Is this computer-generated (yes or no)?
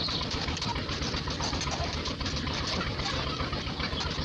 no